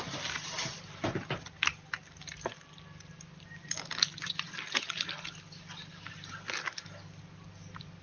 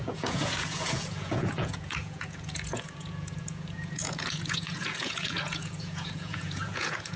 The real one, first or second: first